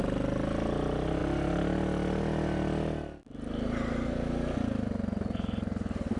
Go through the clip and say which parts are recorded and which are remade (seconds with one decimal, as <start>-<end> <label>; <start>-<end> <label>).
0.0-6.2 recorded